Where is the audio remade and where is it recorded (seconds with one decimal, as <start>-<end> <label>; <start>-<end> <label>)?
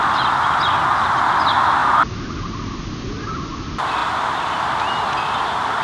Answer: 0.0-5.8 recorded